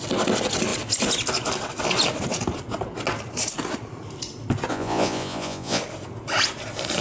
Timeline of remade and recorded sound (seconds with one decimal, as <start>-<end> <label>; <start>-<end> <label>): 0.0-4.7 recorded; 4.7-5.8 remade; 5.8-7.0 recorded